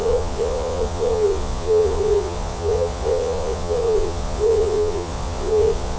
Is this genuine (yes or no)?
no